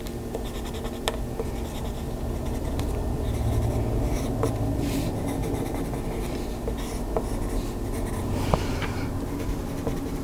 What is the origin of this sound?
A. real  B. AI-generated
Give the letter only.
B